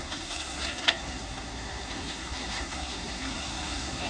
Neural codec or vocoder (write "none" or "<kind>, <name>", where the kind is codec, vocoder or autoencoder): codec, SNAC